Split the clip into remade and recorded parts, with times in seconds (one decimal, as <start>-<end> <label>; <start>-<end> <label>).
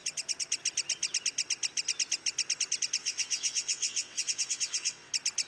0.0-3.0 recorded; 3.0-5.1 remade; 5.1-5.5 recorded